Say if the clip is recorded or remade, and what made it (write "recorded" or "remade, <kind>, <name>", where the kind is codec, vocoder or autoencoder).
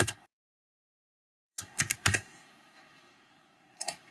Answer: remade, codec, SNAC